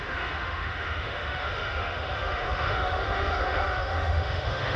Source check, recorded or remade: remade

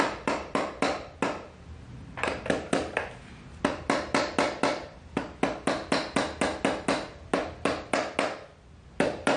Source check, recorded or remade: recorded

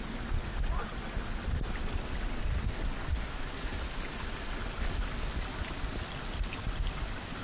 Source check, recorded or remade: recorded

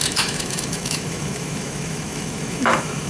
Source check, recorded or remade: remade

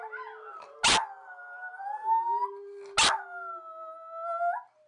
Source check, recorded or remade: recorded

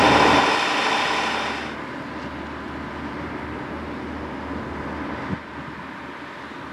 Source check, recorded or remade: recorded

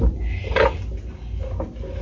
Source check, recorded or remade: recorded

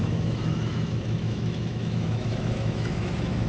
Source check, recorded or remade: remade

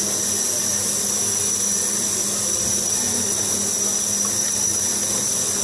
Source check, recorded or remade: recorded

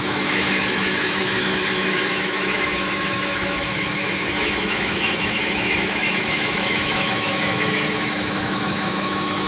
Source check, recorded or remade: remade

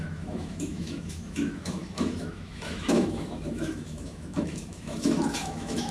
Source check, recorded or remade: remade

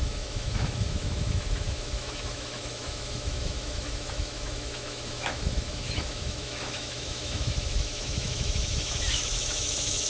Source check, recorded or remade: remade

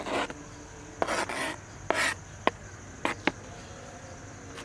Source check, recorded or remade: recorded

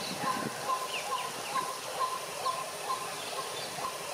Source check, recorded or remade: recorded